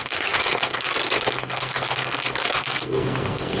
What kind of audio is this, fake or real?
fake